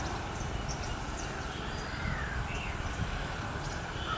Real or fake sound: fake